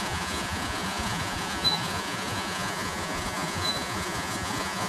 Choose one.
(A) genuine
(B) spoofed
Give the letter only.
B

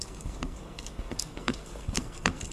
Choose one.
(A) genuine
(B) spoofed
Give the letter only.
B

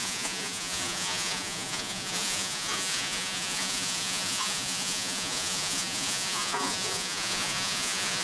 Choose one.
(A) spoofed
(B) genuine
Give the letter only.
A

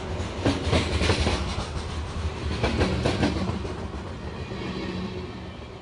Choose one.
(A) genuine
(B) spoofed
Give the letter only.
A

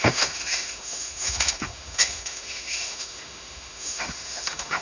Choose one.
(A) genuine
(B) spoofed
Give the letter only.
B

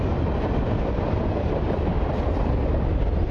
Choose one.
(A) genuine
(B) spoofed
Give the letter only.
A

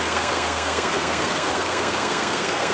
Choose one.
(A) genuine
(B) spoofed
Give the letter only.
B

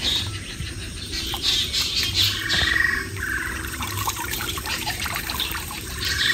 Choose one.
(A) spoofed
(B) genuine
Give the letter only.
A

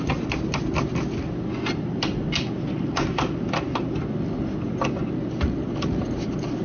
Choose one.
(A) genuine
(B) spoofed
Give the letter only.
A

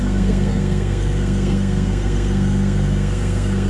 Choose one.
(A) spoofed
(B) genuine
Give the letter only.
A